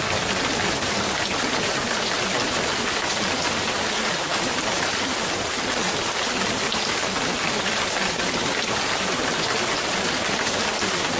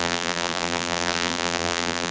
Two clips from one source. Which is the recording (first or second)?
first